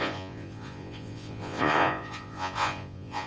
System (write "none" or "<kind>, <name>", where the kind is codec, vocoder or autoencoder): vocoder, Vocos